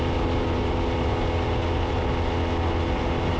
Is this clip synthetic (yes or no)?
no